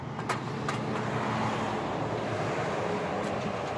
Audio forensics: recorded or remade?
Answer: recorded